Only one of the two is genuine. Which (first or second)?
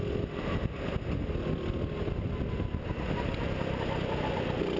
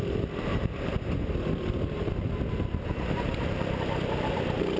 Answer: first